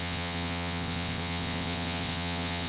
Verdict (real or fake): fake